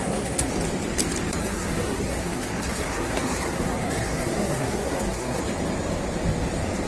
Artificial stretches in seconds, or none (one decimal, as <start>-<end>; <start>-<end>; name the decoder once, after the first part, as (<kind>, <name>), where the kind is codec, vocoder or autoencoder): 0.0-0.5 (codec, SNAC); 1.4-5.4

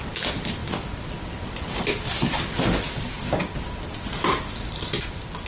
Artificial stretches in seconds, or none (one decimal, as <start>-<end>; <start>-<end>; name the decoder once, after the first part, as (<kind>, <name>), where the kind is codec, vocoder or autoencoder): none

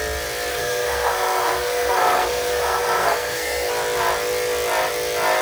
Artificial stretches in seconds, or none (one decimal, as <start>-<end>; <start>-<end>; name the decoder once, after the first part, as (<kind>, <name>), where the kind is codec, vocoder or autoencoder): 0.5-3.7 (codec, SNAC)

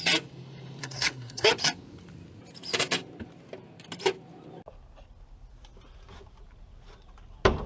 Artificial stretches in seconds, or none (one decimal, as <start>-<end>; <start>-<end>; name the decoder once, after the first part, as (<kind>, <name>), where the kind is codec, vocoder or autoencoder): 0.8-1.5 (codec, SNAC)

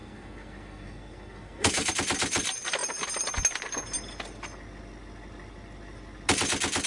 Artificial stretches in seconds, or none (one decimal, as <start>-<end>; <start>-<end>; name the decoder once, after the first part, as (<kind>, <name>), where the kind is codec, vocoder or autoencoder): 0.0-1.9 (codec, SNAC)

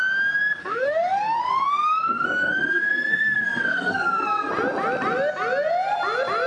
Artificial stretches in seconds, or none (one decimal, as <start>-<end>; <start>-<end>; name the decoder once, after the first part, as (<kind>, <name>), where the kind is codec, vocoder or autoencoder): 0.6-4.5 (codec, SNAC)